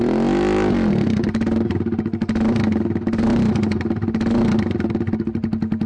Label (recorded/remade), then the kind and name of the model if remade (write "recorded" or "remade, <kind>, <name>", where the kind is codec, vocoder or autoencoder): recorded